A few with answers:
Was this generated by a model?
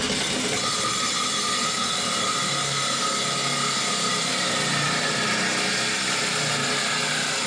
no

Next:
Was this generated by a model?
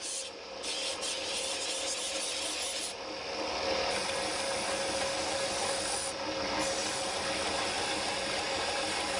no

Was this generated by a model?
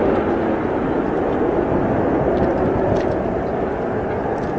no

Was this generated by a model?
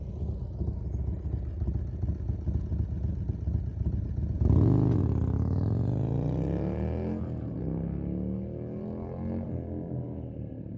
no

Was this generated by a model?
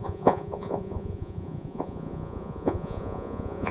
yes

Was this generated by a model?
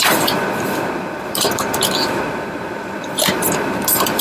yes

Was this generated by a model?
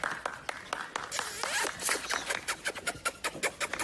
no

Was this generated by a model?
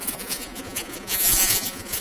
yes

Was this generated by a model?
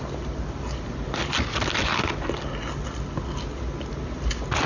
no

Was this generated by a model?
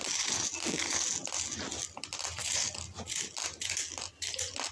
no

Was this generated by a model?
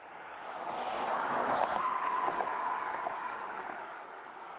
yes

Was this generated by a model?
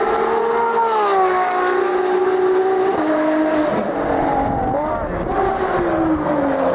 no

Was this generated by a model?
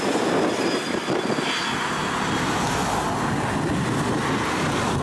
no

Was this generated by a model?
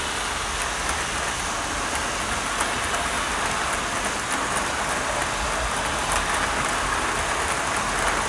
no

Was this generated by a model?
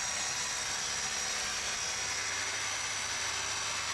no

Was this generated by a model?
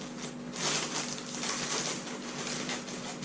no